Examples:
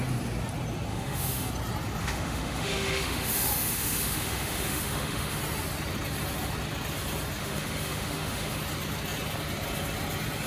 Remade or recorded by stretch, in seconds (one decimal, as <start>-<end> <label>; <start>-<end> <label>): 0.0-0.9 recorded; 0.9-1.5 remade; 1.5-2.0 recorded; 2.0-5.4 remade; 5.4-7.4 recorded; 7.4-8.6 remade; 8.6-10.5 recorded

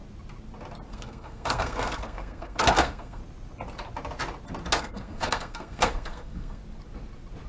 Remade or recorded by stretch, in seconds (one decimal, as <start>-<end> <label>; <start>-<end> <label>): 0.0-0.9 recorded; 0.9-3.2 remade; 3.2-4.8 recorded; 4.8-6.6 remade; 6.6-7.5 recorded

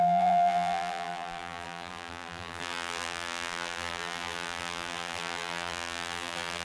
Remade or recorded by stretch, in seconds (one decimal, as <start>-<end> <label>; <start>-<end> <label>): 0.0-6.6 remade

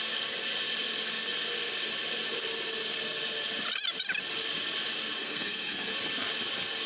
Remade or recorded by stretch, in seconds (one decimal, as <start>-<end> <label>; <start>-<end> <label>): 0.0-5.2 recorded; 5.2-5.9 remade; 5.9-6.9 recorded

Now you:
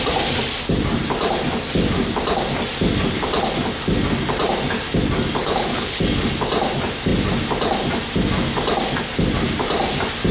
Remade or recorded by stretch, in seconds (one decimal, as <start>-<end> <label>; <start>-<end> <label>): 0.0-5.4 recorded; 5.4-6.0 remade; 6.0-10.3 recorded